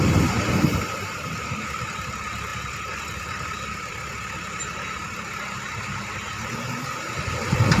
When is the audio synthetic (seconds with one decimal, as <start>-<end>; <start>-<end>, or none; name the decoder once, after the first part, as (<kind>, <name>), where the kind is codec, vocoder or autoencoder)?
0.0-7.8 (vocoder, BigVGAN v2)